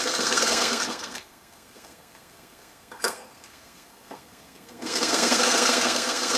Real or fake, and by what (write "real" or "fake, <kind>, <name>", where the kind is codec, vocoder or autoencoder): fake, codec, SNAC